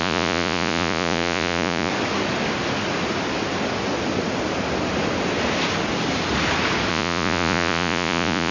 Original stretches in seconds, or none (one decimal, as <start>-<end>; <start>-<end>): 1.9-6.9